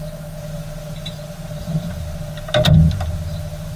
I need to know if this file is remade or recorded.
recorded